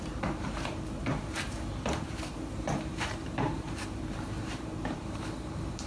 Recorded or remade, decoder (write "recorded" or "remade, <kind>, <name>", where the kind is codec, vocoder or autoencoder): remade, vocoder, BigVGAN v2